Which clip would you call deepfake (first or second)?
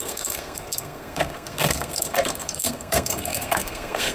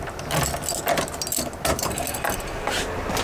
first